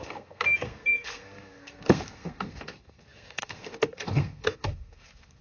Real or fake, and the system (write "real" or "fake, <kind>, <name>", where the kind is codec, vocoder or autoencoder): fake, codec, SNAC